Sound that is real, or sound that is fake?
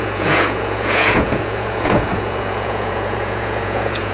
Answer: fake